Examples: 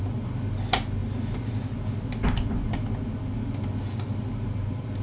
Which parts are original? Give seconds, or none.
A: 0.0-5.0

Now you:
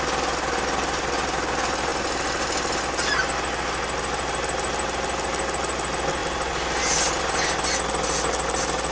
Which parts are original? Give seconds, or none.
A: 0.0-8.9

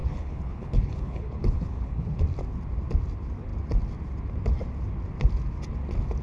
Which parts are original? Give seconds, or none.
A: 2.2-6.2

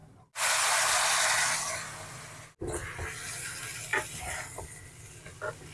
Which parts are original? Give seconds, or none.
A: 0.0-5.7